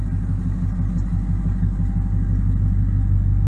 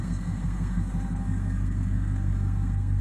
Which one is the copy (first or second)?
second